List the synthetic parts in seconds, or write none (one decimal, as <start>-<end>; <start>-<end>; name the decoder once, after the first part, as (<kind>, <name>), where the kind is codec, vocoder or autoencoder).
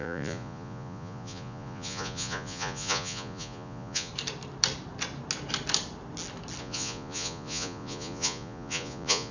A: 0.0-4.1 (vocoder, Vocos); 6.6-9.3